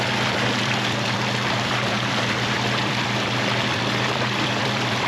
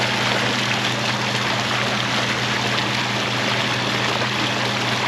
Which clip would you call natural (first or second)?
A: second